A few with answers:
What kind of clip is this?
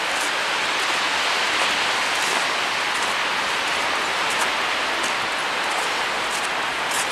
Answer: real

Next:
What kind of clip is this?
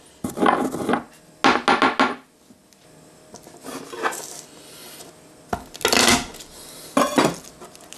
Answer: real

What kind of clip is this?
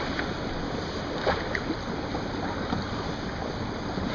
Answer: real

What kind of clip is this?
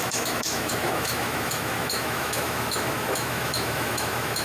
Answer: fake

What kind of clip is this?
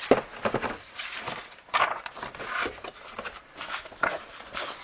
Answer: real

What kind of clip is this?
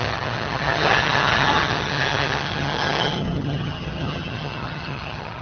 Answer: fake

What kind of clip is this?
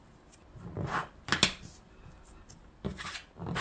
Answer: real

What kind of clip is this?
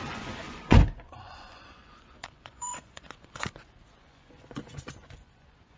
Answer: fake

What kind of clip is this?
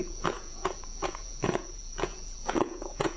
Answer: fake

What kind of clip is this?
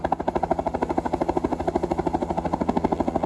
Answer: real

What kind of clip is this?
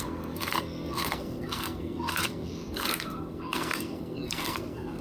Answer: fake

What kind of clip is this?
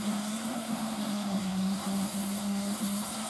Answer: fake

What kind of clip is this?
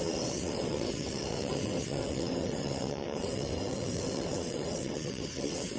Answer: fake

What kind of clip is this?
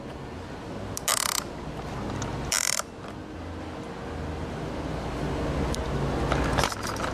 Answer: real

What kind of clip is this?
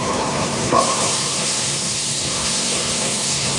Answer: fake